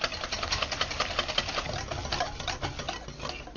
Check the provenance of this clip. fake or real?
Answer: real